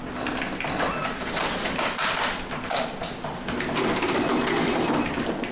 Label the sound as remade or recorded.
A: recorded